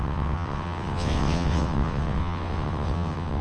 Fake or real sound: fake